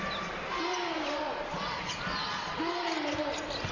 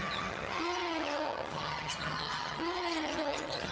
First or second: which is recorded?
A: first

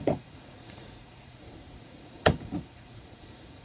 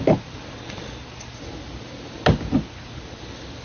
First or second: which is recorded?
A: second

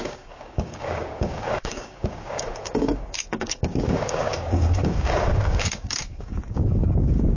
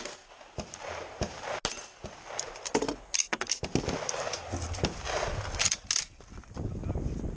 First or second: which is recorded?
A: second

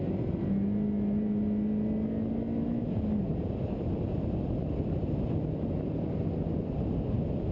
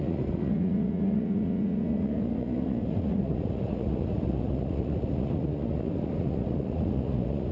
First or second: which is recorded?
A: first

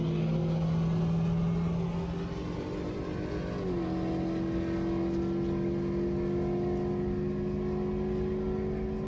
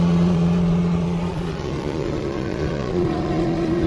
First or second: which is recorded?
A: first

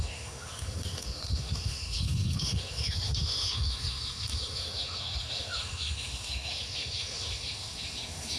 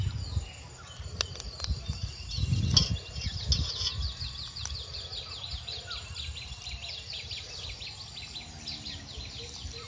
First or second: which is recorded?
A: second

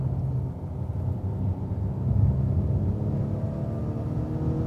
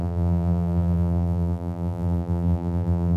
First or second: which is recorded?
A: first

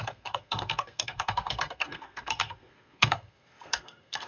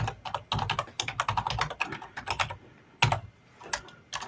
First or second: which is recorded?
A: second